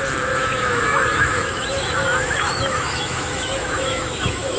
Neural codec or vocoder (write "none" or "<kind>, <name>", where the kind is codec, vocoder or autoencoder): autoencoder, DAC-VAE